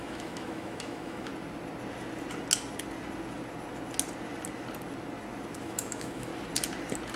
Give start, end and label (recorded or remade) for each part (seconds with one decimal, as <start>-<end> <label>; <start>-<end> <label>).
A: 0.0-1.3 remade; 1.3-5.6 recorded; 5.6-6.3 remade; 6.3-7.2 recorded